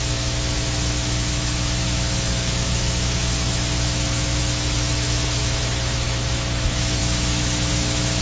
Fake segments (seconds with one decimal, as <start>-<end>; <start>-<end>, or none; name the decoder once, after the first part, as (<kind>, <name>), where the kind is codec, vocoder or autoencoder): 0.0-8.2 (autoencoder, DAC-VAE)